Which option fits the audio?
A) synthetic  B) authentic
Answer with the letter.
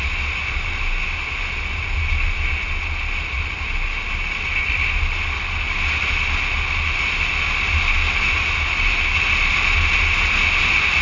B